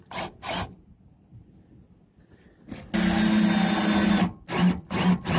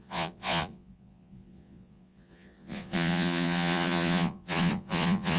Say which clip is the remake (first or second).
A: second